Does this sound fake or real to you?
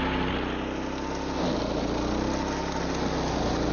real